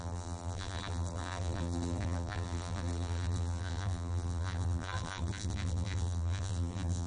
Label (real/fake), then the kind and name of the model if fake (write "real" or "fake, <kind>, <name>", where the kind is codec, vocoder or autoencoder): fake, vocoder, BigVGAN v2